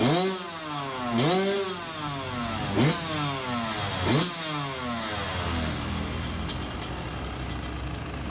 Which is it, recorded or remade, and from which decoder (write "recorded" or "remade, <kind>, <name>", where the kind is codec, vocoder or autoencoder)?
recorded